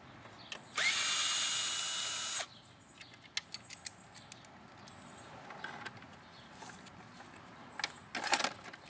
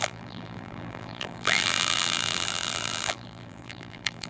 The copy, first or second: second